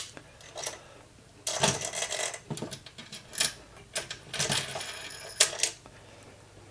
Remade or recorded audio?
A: recorded